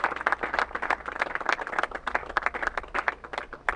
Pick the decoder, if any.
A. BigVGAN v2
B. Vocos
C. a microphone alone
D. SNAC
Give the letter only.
C